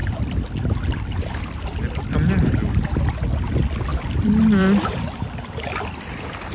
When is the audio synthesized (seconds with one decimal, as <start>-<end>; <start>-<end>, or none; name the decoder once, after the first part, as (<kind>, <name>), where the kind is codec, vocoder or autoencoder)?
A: none